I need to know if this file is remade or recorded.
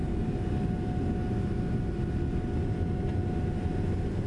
recorded